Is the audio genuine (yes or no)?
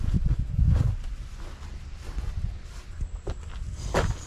yes